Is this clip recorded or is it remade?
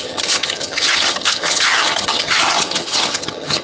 remade